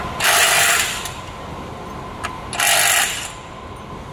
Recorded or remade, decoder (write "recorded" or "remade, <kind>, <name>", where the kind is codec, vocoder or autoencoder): recorded